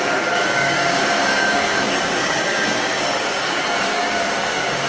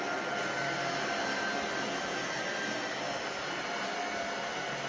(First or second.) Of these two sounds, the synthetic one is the first